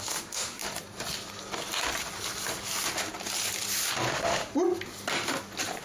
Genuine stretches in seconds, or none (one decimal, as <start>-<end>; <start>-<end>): 0.6-4.1; 4.5-5.8